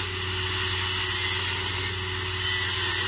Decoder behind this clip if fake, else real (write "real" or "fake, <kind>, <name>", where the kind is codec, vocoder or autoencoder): real